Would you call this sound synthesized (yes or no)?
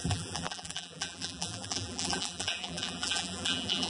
yes